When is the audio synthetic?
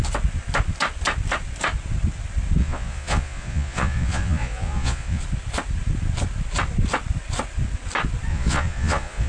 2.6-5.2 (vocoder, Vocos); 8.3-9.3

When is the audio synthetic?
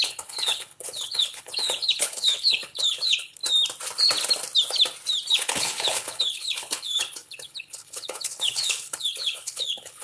0.0-3.4 (codec, HILCodec); 5.3-10.0